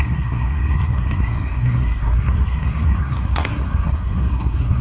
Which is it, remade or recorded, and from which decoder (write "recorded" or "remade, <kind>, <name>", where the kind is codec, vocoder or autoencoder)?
remade, codec, SNAC